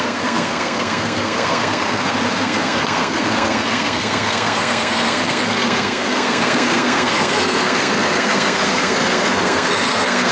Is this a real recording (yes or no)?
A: no